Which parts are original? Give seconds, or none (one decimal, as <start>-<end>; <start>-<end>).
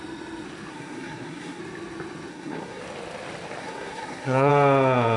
0.0-0.7; 1.6-2.3; 2.8-3.6; 4.5-5.2